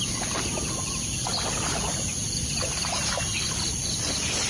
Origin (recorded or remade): recorded